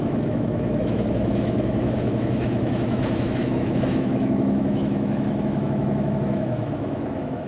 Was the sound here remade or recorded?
remade